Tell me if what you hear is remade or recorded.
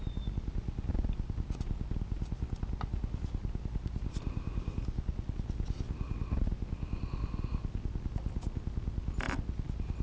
recorded